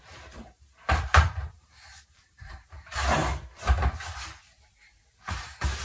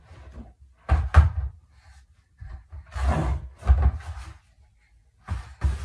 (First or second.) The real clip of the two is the second